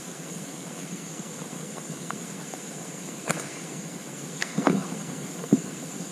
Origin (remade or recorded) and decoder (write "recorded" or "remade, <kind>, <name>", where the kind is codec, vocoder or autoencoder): remade, codec, SNAC